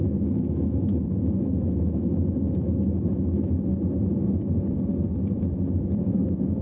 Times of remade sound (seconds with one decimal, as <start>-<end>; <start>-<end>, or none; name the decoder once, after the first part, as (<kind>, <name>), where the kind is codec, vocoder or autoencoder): 0.0-3.7 (autoencoder, DAC-VAE); 6.1-6.6